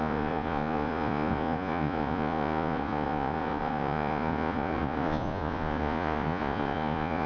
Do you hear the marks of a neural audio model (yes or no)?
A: yes